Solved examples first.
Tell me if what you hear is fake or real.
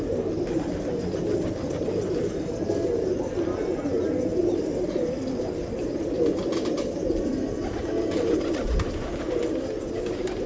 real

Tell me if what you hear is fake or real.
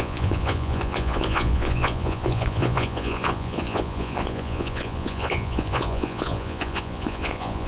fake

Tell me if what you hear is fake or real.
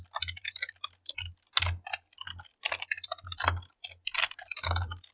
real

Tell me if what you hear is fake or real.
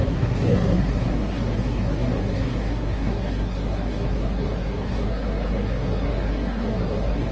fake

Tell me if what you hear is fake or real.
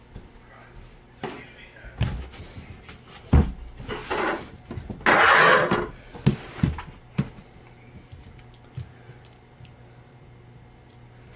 real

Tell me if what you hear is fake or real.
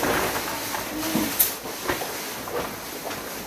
real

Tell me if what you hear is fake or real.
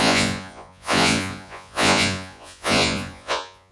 fake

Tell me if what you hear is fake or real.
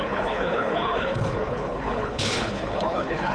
fake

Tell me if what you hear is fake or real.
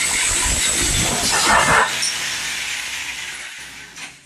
fake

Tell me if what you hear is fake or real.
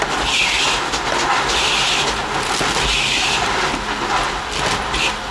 real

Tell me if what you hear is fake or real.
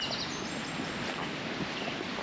real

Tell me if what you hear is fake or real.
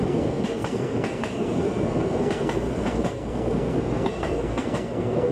fake